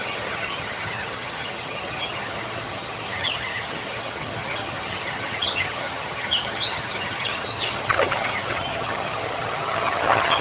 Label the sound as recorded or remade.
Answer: remade